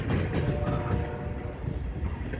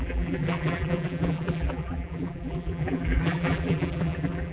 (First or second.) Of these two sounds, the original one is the first